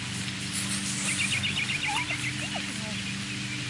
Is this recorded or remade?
recorded